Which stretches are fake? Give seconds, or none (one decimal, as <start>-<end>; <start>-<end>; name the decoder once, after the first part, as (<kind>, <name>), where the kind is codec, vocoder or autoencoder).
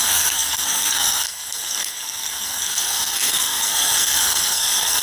0.0-5.0 (codec, SNAC)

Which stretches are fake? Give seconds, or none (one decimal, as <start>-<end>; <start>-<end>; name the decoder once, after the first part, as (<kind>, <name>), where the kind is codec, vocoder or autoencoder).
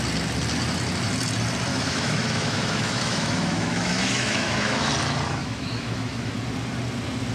1.7-4.9 (autoencoder, DAC-VAE); 5.4-6.3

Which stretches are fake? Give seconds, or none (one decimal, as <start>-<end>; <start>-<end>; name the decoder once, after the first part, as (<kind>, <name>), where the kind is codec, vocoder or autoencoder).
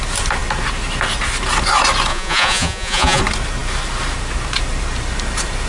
2.1-3.2 (vocoder, Vocos)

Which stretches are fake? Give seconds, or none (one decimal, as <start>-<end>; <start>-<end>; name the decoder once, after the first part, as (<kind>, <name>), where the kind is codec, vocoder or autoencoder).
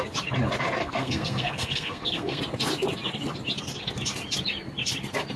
0.8-2.4 (codec, SNAC)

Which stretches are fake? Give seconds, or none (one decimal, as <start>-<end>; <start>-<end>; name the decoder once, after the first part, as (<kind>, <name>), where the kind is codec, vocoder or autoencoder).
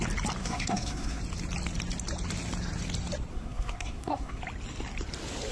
0.4-1.2 (codec, SNAC); 3.3-4.4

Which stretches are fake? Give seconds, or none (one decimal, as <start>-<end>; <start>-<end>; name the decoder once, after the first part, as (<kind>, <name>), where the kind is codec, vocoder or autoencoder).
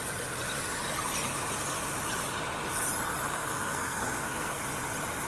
3.3-4.6 (codec, SNAC)